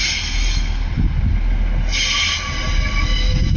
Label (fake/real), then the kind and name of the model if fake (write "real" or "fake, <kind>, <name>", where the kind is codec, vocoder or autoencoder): real